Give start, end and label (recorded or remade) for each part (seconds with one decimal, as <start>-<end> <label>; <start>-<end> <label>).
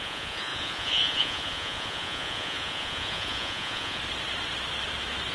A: 0.0-4.0 remade; 4.0-5.3 recorded